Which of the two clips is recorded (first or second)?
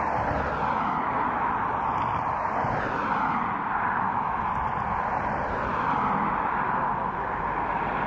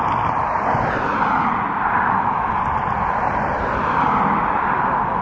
first